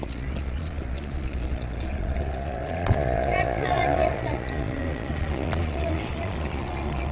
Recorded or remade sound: remade